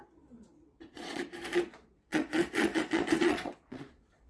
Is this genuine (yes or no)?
no